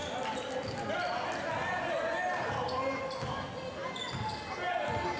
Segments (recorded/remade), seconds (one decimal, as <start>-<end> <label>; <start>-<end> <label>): 0.0-5.2 recorded